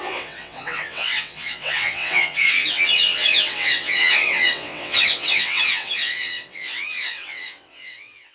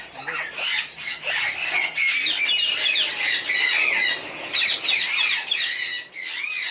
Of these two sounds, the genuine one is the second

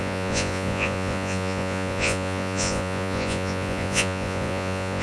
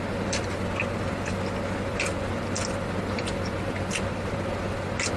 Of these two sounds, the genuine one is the second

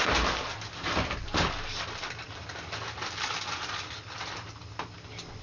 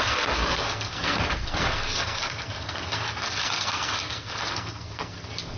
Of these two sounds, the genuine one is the first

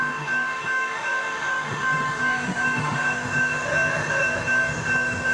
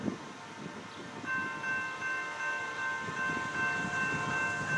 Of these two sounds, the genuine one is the second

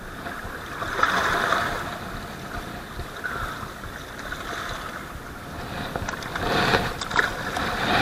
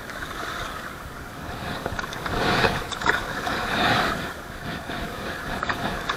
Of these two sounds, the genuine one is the first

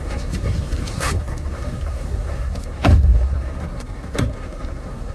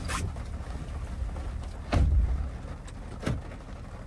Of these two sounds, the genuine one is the second